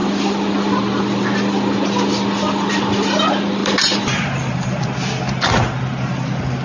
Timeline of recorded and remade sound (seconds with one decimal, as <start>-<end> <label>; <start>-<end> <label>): 0.0-3.6 recorded; 3.6-4.8 remade; 4.8-6.6 recorded

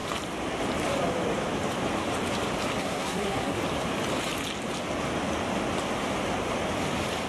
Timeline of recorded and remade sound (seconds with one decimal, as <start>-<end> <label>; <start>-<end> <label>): 0.0-2.8 recorded; 2.8-3.6 remade; 3.6-7.3 recorded